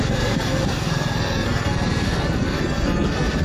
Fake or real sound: fake